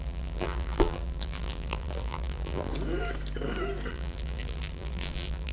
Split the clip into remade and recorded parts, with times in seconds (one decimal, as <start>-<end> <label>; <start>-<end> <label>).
0.0-2.7 remade; 2.7-3.9 recorded; 3.9-5.5 remade